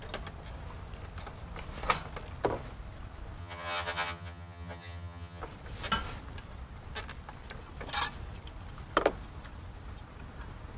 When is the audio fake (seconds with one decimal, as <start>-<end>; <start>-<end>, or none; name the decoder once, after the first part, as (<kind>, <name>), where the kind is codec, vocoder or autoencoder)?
3.4-5.4 (vocoder, HiFi-GAN)

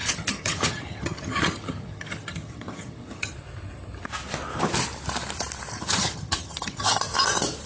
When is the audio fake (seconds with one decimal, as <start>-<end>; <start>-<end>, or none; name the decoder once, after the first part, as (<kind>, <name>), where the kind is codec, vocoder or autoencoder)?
0.0-3.3 (vocoder, HiFi-GAN); 5.7-7.0